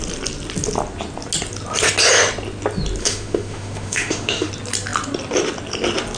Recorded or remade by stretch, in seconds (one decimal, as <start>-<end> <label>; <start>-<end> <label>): 0.0-3.0 recorded; 3.0-4.5 remade; 4.5-6.2 recorded